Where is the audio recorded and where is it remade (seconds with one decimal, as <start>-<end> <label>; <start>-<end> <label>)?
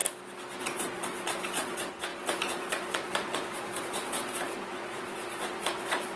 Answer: 0.0-0.6 recorded; 0.6-6.2 remade